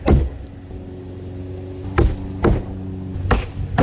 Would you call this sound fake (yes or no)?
no